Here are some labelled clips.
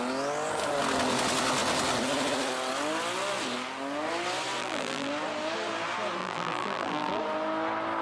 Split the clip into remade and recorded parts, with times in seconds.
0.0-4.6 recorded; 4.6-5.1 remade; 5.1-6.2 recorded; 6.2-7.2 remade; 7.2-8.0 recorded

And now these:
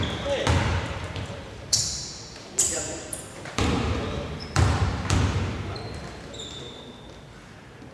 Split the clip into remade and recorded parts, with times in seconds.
0.0-0.7 recorded; 0.7-1.8 remade; 1.8-2.7 recorded; 2.7-6.8 remade; 6.8-7.9 recorded